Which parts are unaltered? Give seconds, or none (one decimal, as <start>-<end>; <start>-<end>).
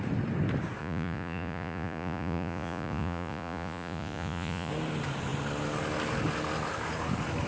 0.0-0.8; 4.7-7.5